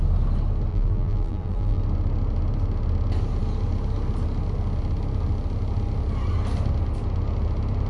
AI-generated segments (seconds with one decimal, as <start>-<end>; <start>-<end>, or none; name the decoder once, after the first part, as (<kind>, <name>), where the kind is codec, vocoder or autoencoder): 0.7-1.8 (vocoder, BigVGAN v2)